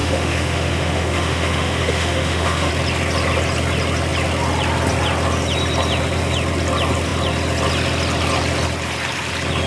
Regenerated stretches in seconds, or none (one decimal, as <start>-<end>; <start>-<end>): 0.0-2.7